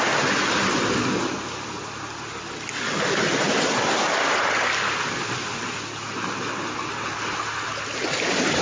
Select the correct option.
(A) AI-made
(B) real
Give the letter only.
B